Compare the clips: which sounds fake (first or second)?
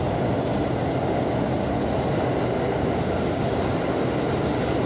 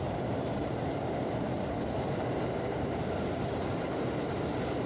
second